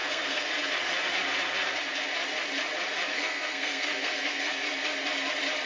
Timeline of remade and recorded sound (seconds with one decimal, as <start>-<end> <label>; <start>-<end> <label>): 0.0-0.5 remade; 0.5-3.1 recorded; 3.1-4.5 remade; 4.5-5.7 recorded